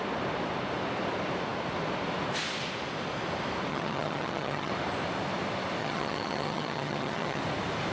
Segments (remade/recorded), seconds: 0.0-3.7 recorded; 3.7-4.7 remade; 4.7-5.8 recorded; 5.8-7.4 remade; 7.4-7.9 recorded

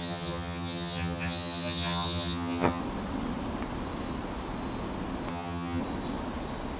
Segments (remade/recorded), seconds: 0.0-2.8 remade; 2.8-5.3 recorded; 5.3-5.8 remade; 5.8-6.8 recorded

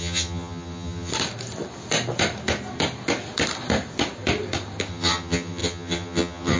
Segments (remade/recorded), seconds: 0.0-1.1 remade; 1.1-4.9 recorded; 4.9-6.6 remade

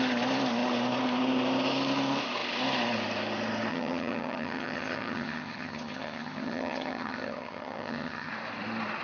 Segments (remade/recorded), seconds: 0.0-3.7 recorded; 3.7-8.3 remade; 8.3-9.0 recorded

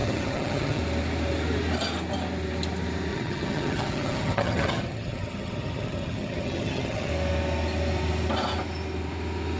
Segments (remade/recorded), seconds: 0.0-0.8 remade; 0.8-3.1 recorded; 3.1-7.1 remade; 7.1-9.6 recorded

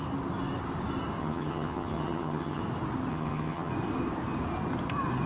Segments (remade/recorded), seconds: 0.0-1.2 recorded; 1.2-2.6 remade; 2.6-3.1 recorded; 3.1-3.7 remade; 3.7-5.3 recorded